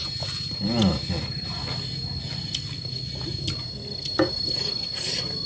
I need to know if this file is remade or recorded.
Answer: recorded